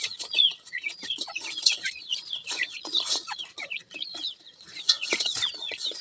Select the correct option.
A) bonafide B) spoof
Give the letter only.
B